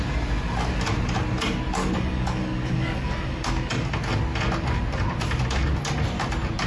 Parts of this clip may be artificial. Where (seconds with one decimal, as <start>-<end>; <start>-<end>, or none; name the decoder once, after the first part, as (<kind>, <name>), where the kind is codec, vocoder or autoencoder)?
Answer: 1.8-3.7 (codec, DAC)